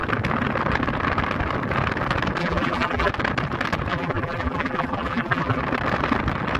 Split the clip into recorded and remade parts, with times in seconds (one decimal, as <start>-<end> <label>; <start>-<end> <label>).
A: 0.0-2.4 recorded; 2.4-3.1 remade; 3.1-3.9 recorded; 3.9-5.6 remade; 5.6-6.6 recorded